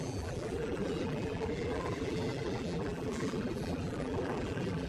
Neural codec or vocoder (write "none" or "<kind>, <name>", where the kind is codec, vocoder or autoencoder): vocoder, BigVGAN v2